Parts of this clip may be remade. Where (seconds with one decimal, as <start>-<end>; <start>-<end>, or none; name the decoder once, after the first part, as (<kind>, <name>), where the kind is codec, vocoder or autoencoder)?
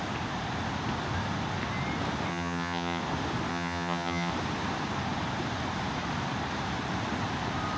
2.3-3.0 (vocoder, HiFi-GAN); 3.5-4.3